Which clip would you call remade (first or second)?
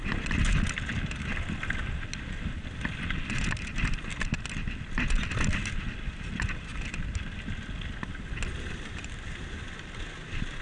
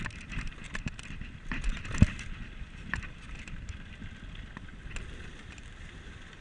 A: second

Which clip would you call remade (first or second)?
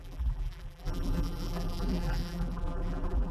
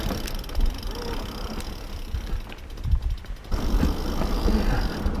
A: first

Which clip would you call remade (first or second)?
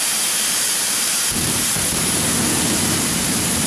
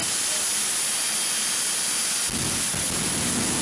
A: first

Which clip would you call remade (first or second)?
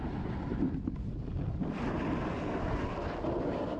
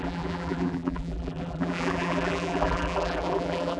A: second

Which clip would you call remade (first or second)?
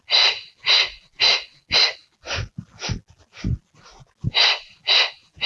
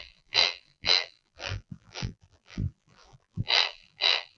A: second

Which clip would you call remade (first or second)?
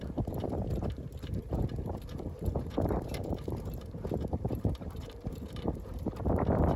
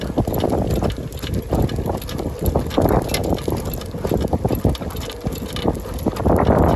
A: first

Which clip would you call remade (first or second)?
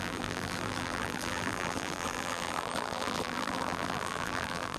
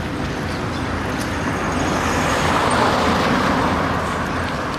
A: first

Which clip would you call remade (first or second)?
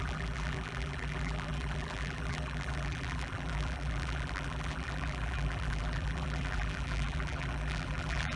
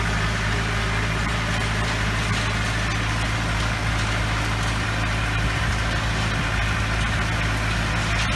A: first